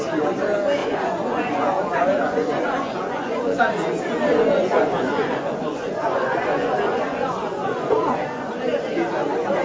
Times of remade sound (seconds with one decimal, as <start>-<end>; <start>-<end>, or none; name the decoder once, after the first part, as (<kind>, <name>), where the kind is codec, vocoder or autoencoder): 0.8-3.6 (vocoder, Vocos); 4.3-8.5